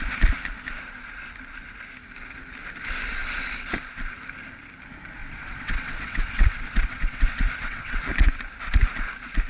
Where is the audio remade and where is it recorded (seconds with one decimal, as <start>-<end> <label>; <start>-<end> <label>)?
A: 0.0-5.2 recorded; 5.2-8.0 remade; 8.0-9.5 recorded